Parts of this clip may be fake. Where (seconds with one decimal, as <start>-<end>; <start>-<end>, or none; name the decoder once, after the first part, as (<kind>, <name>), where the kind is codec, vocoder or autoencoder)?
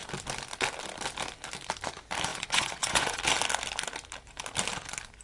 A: 2.3-3.2 (vocoder, Vocos)